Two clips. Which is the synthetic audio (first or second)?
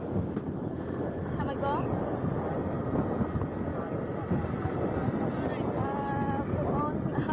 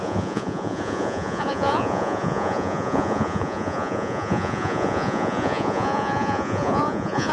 second